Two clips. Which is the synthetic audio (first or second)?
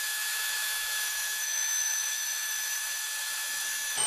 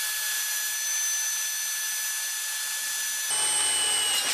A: first